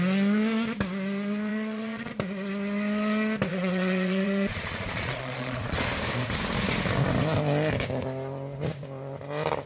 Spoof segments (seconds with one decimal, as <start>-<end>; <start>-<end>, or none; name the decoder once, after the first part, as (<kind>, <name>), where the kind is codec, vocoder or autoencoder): 1.5-2.1 (vocoder, Vocos); 3.5-5.8